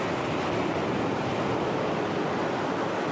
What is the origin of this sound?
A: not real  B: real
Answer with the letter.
B